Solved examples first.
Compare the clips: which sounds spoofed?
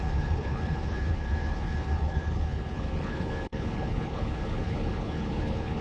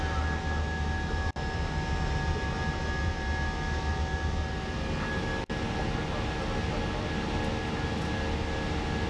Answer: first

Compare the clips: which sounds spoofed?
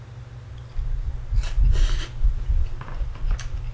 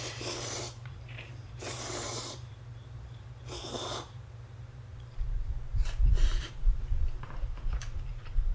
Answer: second